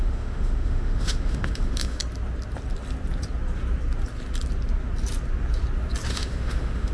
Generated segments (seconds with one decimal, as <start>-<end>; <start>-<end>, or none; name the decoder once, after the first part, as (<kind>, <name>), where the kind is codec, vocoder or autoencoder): 0.0-2.0 (autoencoder, DAC-VAE); 6.1-6.9